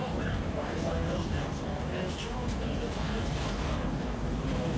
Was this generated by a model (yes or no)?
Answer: yes